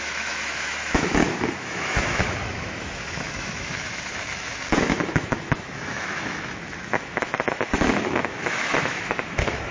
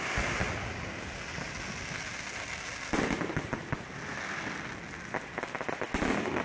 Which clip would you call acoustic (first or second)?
second